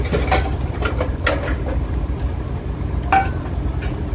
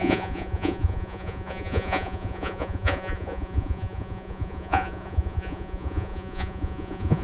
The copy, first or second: second